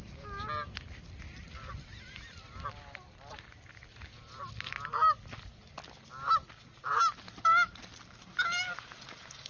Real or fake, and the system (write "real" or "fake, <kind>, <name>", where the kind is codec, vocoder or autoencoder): real